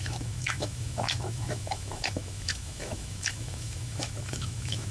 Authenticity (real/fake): fake